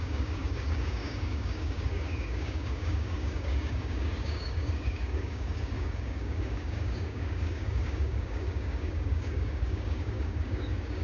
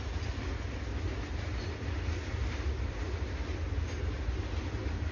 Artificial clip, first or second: first